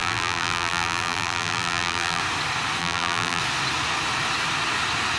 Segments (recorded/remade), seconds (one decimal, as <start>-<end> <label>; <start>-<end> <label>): 0.0-2.2 remade; 2.2-2.8 recorded; 2.8-3.4 remade; 3.4-5.2 recorded